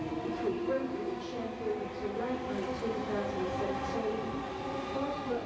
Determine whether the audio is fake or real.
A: real